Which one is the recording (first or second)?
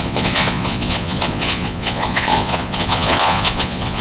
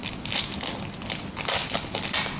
second